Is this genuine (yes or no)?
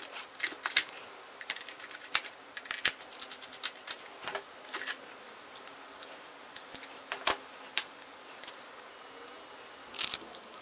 yes